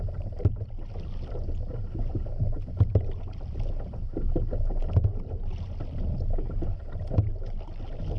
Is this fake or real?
real